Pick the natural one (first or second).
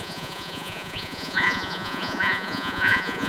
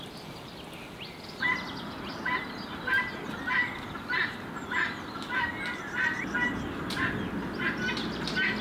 second